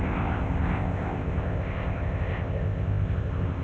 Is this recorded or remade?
remade